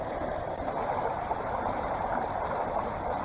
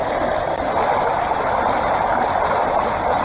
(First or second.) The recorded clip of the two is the second